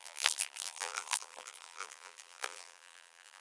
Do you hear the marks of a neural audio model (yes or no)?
yes